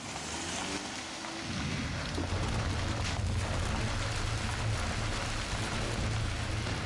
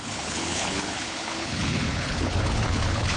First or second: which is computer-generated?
second